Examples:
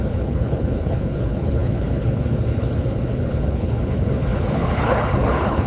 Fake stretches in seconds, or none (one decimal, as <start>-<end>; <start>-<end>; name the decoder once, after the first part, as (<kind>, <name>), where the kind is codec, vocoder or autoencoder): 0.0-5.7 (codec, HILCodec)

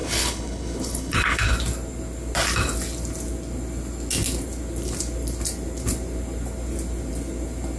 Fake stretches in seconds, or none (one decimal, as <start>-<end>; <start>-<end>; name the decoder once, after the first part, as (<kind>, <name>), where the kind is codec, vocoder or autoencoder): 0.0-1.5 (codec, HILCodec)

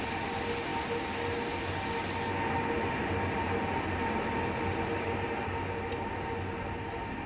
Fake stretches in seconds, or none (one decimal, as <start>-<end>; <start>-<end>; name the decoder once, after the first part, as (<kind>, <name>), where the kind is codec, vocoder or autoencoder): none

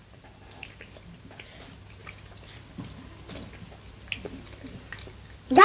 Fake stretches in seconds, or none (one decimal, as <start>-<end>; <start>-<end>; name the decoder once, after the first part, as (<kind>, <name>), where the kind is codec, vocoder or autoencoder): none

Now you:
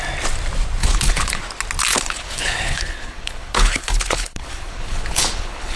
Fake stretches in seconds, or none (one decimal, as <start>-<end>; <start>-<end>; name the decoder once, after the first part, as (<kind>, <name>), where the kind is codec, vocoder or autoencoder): 0.8-1.4 (codec, HILCodec); 1.9-5.8

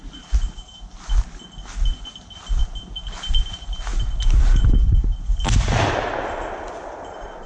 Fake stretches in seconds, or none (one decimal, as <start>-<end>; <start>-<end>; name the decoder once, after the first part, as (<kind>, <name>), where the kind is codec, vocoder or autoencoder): none

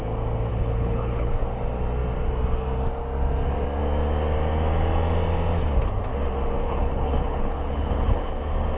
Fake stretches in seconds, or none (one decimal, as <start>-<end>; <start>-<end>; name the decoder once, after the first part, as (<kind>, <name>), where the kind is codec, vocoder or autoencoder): 0.5-1.4 (codec, HILCodec); 6.6-8.4

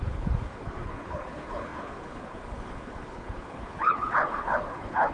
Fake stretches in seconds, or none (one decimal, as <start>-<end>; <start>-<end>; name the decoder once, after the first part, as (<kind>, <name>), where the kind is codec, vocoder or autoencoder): 0.0-5.1 (codec, HILCodec)